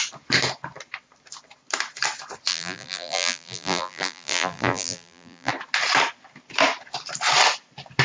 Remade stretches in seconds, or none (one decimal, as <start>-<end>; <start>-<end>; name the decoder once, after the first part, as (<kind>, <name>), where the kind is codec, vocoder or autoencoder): 2.5-5.5 (vocoder, BigVGAN v2)